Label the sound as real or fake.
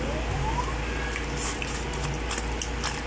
real